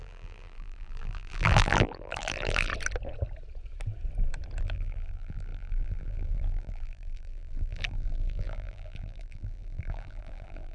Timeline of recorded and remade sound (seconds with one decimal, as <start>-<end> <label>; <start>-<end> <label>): 0.0-2.7 remade; 2.7-4.6 recorded; 4.6-10.7 remade